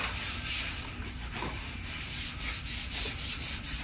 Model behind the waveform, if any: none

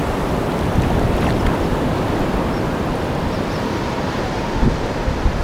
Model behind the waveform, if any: vocoder, BigVGAN v2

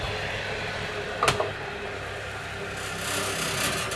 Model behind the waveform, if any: none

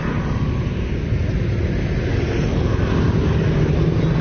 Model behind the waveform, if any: none